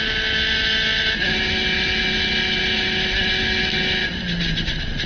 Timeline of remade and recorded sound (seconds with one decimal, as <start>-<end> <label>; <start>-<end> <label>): 0.0-5.1 recorded